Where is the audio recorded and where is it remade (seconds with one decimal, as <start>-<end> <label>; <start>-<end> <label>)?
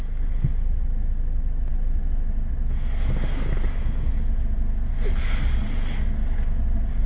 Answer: 0.0-7.1 recorded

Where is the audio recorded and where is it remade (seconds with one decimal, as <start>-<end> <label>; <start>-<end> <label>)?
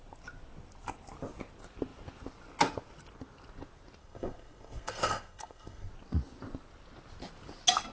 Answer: 0.0-4.0 recorded; 4.0-5.9 remade; 5.9-7.9 recorded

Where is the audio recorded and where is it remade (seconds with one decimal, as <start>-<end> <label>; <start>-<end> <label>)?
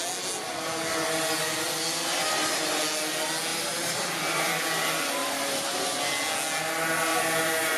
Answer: 0.0-3.5 recorded; 3.5-4.5 remade; 4.5-5.2 recorded; 5.2-6.0 remade; 6.0-7.1 recorded; 7.1-7.8 remade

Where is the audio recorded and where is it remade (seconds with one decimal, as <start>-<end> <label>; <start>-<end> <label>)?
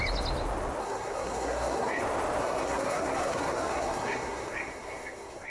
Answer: 0.0-0.8 recorded; 0.8-2.0 remade; 2.0-2.4 recorded; 2.4-5.5 remade